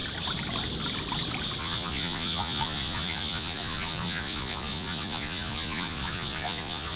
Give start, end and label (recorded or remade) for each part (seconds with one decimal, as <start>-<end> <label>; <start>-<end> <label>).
0.0-1.6 recorded; 1.6-7.0 remade